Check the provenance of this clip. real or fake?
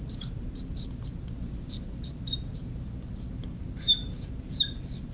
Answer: real